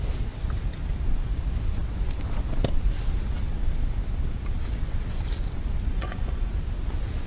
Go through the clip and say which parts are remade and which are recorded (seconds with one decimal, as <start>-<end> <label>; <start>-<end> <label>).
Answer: 0.0-5.9 recorded; 5.9-6.5 remade; 6.5-7.3 recorded